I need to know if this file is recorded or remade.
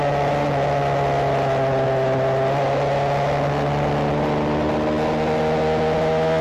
recorded